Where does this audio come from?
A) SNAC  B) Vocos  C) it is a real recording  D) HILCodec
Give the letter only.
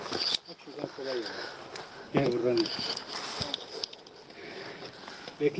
C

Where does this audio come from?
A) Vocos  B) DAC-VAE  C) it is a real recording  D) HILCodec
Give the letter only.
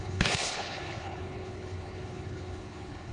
D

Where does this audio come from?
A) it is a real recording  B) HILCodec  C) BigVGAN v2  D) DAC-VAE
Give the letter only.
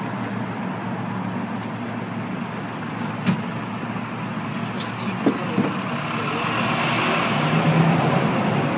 A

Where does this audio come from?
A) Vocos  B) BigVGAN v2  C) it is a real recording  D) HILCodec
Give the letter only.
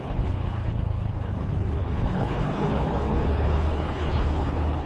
D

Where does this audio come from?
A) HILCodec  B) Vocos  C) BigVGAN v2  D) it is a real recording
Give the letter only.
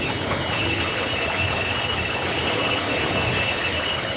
A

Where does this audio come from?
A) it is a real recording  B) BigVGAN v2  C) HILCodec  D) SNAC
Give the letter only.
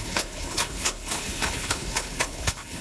C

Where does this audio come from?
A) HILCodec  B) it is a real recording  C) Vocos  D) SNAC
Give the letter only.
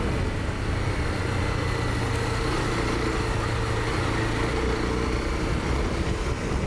B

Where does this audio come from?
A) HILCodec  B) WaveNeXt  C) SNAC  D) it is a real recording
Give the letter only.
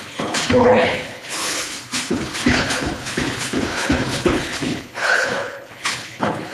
A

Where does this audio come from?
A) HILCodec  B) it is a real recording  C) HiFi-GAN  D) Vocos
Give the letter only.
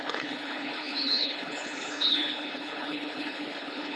A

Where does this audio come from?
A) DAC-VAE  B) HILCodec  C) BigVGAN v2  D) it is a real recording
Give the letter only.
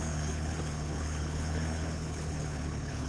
B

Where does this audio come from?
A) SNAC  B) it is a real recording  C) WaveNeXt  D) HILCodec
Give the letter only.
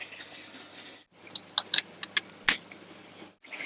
B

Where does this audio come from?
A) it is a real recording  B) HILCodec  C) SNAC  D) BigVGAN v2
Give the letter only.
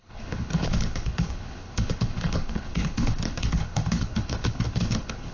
B